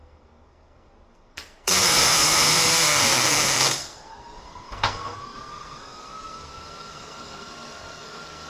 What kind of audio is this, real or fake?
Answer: fake